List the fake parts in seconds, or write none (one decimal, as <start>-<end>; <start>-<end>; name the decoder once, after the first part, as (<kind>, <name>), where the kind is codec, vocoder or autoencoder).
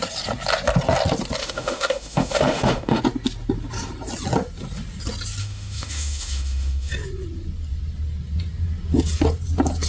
1.4-3.0 (autoencoder, DAC-VAE); 5.4-6.9